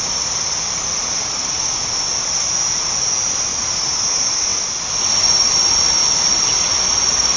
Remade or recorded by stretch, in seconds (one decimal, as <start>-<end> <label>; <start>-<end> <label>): 0.0-7.4 recorded